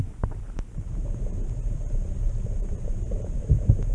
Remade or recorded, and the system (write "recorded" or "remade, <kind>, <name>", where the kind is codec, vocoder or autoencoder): remade, vocoder, BigVGAN v2